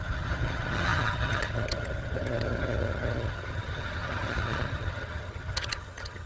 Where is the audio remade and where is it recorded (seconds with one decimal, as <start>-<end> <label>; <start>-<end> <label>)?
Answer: 0.0-6.3 remade